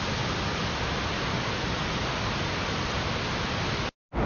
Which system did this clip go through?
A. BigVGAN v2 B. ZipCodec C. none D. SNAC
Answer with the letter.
C